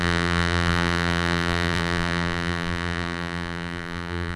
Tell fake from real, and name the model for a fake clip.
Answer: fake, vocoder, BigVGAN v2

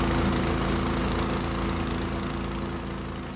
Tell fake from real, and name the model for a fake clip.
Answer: real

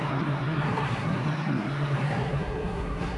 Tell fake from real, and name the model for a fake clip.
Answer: fake, codec, SNAC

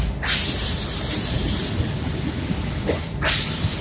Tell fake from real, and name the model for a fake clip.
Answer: real